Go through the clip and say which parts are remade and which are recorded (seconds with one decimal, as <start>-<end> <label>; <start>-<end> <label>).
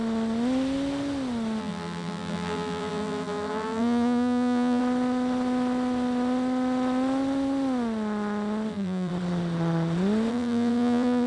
0.0-1.6 recorded; 1.6-4.8 remade; 4.8-8.7 recorded; 8.7-9.1 remade; 9.1-10.3 recorded; 10.3-11.3 remade